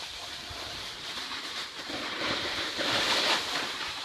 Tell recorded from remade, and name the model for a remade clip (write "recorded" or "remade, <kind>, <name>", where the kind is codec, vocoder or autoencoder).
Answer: remade, vocoder, BigVGAN v2